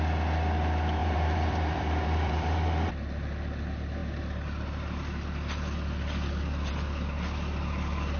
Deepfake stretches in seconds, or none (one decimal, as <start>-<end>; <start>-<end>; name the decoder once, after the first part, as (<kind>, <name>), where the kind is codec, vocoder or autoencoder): 1.0-2.9 (vocoder, BigVGAN v2)